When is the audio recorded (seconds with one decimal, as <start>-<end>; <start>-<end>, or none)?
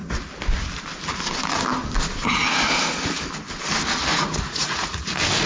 0.0-4.1; 5.0-5.5